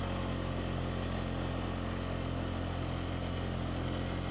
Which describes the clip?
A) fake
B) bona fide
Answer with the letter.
B